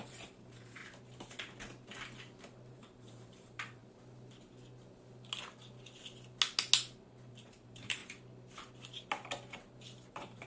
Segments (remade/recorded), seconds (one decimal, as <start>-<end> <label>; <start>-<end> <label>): 0.0-0.8 remade; 0.8-2.7 recorded; 2.7-3.8 remade; 3.8-7.3 recorded; 7.3-8.0 remade; 8.0-10.1 recorded; 10.1-10.5 remade